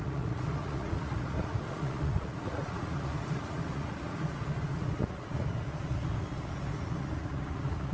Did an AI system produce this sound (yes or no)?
yes